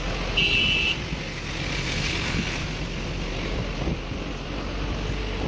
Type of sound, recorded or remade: recorded